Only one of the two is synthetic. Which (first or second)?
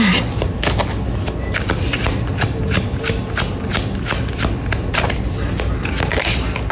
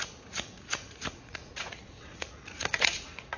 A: second